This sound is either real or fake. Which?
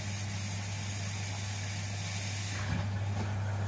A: real